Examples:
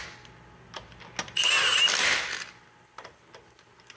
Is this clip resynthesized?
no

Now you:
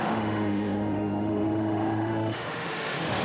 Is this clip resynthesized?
yes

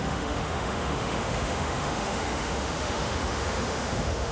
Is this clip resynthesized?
yes